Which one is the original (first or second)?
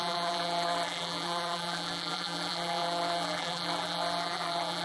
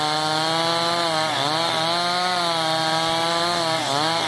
second